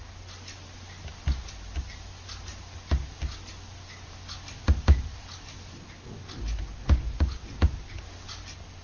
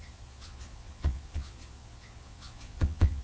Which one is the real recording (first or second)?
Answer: first